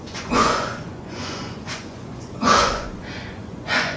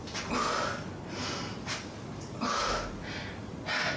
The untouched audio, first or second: second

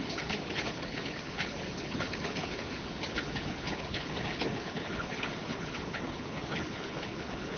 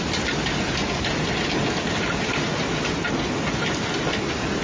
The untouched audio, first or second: second